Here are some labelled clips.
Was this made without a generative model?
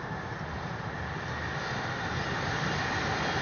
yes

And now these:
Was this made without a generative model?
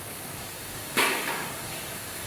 no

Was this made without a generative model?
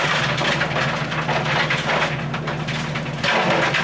yes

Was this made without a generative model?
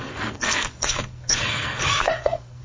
no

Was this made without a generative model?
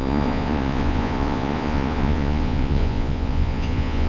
no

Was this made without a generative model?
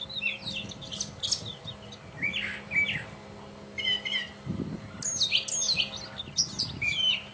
yes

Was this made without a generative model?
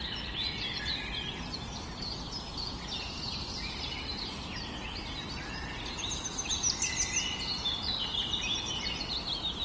yes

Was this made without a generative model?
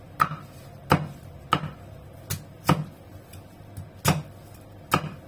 yes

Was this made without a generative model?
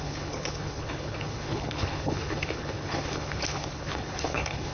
no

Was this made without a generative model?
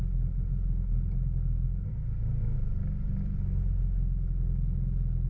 yes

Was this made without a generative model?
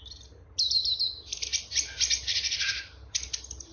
yes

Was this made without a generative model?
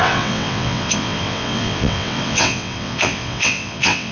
no